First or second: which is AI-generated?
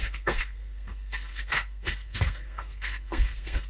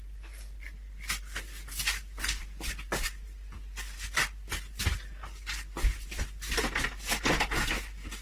first